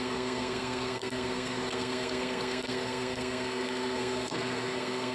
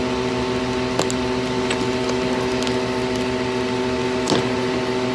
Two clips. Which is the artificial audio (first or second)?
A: first